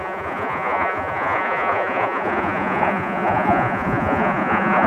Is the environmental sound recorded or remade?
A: remade